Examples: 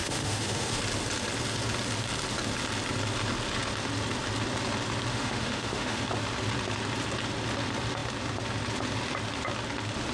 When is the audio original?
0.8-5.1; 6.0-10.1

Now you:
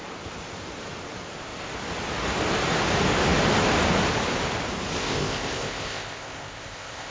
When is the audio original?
0.0-5.0

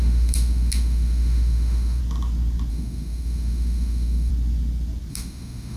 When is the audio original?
2.0-2.7; 4.3-5.1

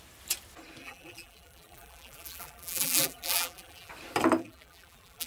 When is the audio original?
0.0-0.8; 3.9-4.4

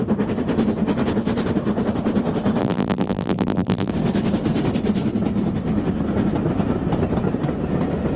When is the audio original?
0.0-2.6; 3.9-8.2

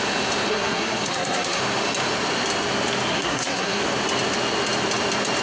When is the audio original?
0.0-0.5; 1.6-3.1; 3.8-5.4

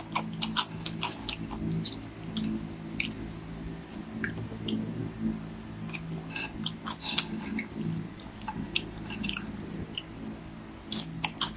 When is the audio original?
0.0-5.0; 9.7-11.6